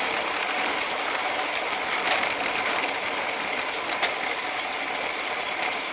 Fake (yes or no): yes